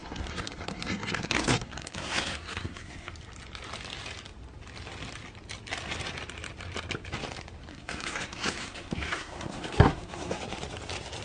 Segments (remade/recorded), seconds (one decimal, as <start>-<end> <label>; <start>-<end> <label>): 0.0-3.1 remade; 3.1-7.7 recorded; 7.7-10.4 remade; 10.4-11.2 recorded